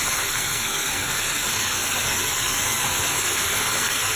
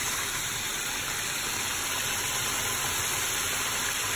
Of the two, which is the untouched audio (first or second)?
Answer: second